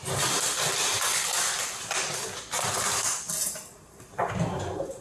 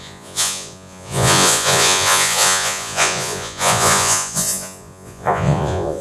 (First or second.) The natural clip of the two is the first